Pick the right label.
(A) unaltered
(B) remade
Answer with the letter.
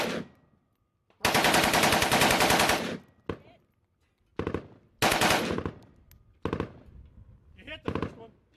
A